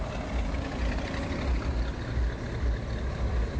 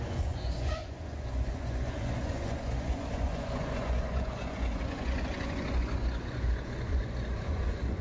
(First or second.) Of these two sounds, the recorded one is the first